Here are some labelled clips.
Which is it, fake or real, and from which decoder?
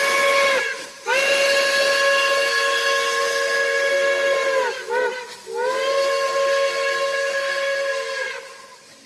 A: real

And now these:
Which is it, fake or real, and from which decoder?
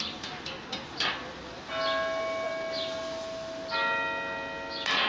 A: real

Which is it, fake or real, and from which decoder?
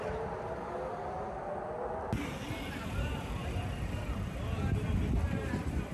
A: real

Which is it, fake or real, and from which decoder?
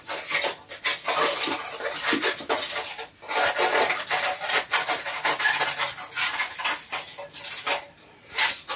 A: real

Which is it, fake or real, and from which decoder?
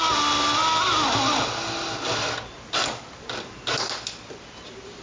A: real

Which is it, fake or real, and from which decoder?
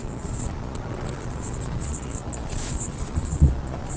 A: fake, vocoder, Vocos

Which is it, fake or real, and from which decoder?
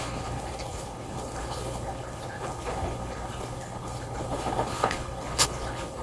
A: fake, codec, HILCodec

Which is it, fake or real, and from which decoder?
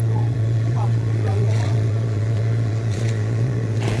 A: fake, vocoder, Vocos